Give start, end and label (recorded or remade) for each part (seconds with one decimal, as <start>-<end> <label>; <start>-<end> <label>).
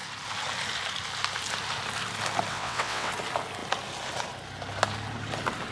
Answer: 0.0-2.5 recorded; 2.5-3.1 remade; 3.1-5.7 recorded